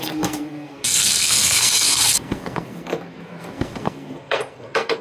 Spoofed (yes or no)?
yes